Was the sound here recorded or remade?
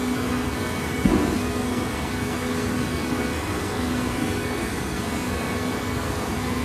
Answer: remade